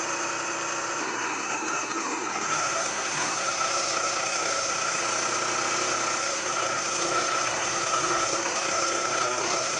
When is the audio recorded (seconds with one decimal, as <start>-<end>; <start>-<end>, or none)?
0.0-1.0; 5.0-6.2